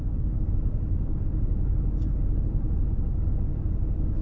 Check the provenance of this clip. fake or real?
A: real